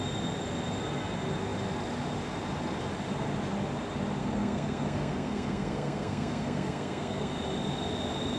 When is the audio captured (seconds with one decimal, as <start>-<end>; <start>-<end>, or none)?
0.0-4.2; 7.3-8.4